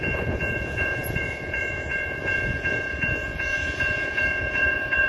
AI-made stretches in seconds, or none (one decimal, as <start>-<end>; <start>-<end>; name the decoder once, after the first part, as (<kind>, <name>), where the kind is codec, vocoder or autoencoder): 0.0-5.1 (vocoder, Vocos)